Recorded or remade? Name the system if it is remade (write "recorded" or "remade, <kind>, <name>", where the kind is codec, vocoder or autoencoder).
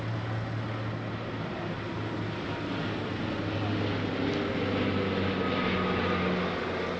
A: recorded